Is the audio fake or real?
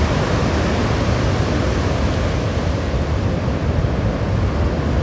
real